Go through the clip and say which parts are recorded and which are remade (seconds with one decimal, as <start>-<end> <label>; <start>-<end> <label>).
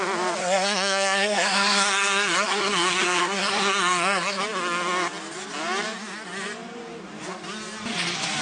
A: 0.0-0.4 recorded; 0.4-4.4 remade; 4.4-8.4 recorded